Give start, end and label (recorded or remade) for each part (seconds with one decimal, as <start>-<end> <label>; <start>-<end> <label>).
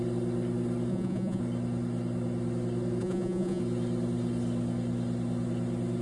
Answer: 0.0-0.9 recorded; 0.9-1.4 remade; 1.4-3.0 recorded; 3.0-3.6 remade; 3.6-6.0 recorded